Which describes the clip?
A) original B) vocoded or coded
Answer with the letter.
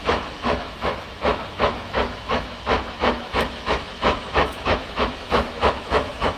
B